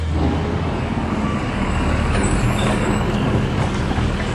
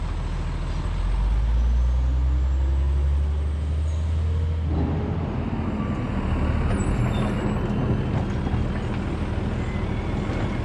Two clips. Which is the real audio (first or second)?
second